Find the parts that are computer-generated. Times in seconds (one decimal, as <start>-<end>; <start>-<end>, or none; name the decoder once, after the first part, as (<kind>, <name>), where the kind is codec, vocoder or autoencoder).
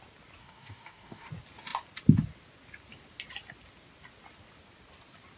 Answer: 0.4-1.2 (codec, DAC)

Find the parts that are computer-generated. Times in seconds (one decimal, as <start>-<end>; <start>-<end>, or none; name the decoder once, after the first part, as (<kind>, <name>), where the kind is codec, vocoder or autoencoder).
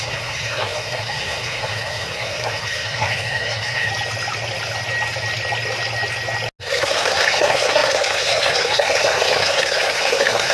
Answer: 0.0-3.9 (codec, SNAC); 6.6-10.5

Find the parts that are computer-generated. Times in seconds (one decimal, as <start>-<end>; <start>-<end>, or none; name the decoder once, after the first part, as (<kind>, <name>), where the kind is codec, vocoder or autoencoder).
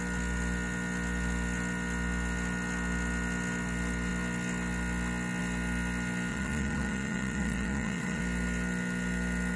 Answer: 6.3-8.2 (vocoder, Vocos)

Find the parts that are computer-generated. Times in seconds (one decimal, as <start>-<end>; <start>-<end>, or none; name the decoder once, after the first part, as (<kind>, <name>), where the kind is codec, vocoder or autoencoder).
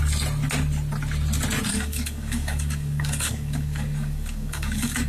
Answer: 1.7-5.1 (codec, DAC)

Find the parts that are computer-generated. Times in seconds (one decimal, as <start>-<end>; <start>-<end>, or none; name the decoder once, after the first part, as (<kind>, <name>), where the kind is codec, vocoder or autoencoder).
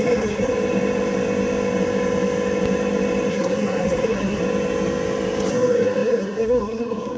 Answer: 0.0-0.5 (codec, SNAC); 3.3-4.4; 5.5-7.2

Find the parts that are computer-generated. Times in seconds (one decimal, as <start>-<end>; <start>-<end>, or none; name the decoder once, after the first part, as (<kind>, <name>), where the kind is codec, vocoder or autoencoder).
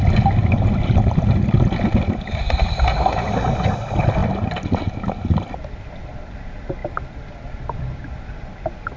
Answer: none